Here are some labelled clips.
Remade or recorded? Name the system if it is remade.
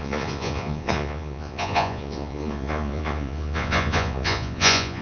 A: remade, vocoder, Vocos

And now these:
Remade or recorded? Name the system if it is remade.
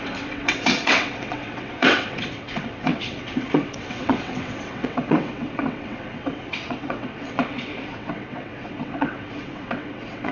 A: remade, vocoder, WaveNeXt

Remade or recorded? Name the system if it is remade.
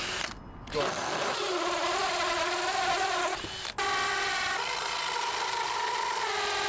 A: recorded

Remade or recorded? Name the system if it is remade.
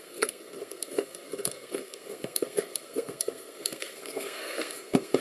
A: remade, codec, SNAC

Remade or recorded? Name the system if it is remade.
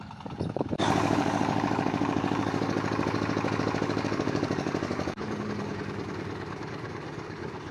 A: remade, codec, DAC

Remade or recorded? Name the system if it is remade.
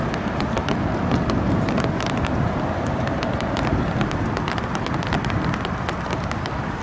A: recorded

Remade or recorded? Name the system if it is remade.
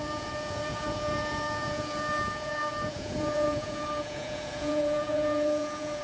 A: remade, vocoder, Vocos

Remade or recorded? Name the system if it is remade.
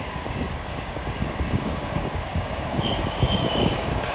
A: remade, codec, DAC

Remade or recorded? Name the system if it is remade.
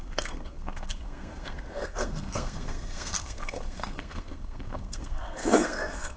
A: remade, codec, SNAC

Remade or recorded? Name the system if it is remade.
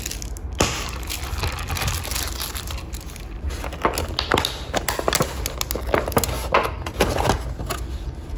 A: recorded